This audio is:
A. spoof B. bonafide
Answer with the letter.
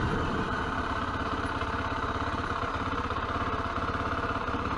A